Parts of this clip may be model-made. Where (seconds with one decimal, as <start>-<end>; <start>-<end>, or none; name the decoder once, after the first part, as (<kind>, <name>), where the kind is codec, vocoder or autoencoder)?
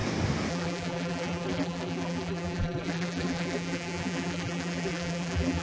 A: 0.5-5.6 (vocoder, BigVGAN v2)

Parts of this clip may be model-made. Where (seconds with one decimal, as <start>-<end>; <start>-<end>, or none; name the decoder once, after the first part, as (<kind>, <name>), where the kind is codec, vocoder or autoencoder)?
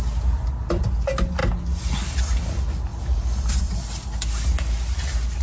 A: 2.9-3.5 (vocoder, BigVGAN v2)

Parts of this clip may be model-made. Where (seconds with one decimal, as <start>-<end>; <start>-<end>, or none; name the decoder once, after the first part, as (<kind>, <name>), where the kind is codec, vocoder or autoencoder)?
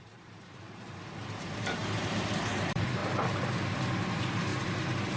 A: 0.0-3.0 (vocoder, BigVGAN v2); 4.1-4.5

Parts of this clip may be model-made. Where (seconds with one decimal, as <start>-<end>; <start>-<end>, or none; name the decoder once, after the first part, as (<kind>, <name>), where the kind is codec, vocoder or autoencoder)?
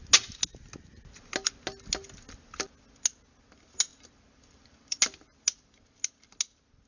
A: 3.9-5.0 (vocoder, BigVGAN v2)